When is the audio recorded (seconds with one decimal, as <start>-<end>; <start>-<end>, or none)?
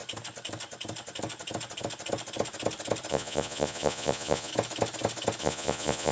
0.0-3.1; 4.5-5.4